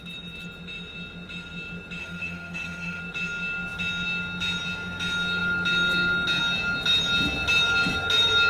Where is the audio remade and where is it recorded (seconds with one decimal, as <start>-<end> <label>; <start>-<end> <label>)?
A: 0.0-2.0 recorded; 2.0-3.0 remade; 3.0-8.5 recorded